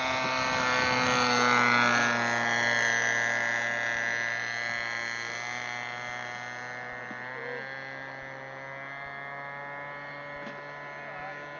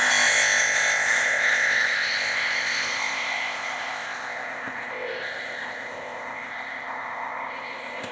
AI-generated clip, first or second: second